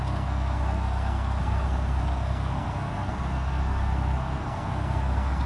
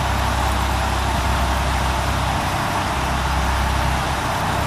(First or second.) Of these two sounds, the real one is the second